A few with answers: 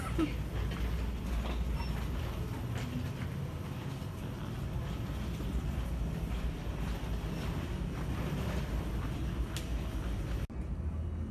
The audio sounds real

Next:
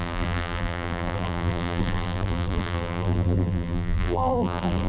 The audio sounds fake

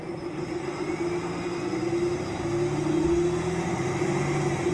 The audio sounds real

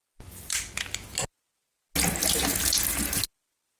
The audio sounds real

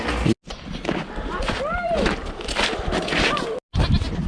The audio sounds real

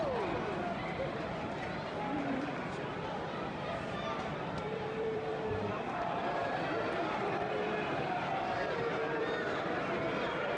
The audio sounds fake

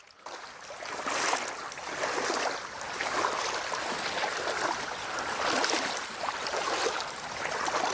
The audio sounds real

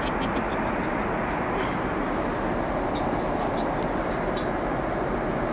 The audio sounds real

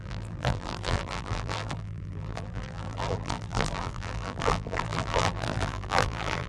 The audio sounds fake